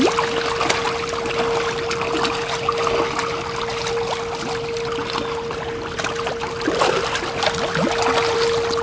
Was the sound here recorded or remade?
recorded